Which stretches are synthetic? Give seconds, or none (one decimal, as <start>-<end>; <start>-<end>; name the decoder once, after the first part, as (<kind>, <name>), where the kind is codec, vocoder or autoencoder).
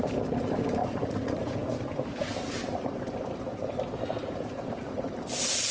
0.8-1.6 (vocoder, Vocos); 4.2-5.1